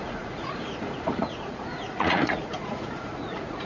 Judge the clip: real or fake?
fake